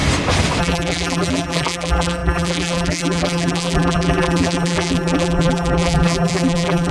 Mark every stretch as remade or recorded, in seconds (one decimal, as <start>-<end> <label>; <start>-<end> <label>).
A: 0.0-0.6 recorded; 0.6-6.9 remade